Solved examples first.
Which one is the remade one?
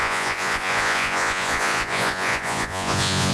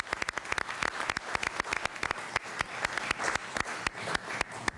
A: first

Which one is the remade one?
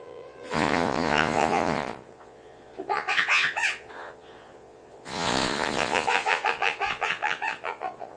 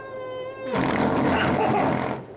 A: first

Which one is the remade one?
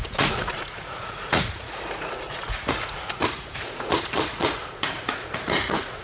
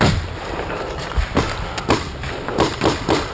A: first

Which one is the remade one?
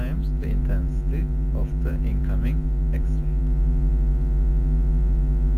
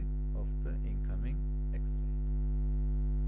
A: first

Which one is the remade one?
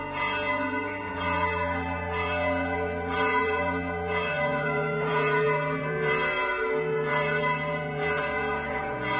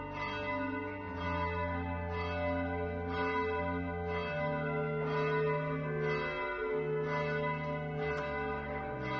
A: first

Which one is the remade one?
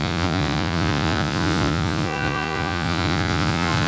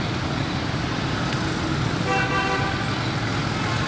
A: first